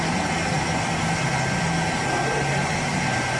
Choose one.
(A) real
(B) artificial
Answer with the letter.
A